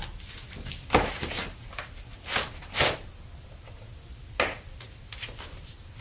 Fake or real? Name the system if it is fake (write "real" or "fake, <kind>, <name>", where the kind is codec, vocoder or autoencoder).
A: real